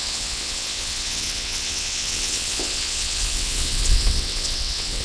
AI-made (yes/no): yes